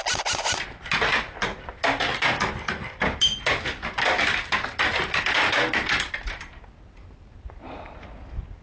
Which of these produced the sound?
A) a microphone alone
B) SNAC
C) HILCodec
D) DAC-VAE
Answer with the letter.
A